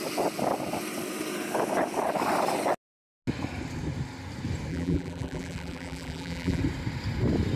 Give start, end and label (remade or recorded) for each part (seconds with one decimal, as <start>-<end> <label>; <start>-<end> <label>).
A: 0.0-4.7 recorded; 4.7-6.6 remade; 6.6-7.6 recorded